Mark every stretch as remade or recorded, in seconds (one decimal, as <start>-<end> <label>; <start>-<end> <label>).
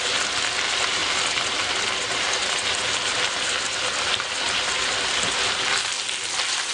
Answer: 0.0-6.7 recorded